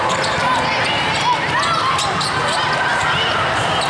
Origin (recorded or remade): remade